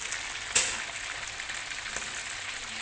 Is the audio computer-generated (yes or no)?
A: no